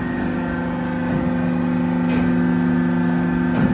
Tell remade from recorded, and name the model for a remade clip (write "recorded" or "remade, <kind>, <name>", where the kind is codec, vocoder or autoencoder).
recorded